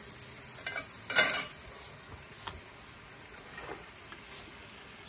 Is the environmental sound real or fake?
real